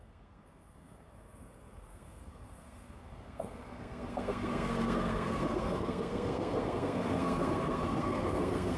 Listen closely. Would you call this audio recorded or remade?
remade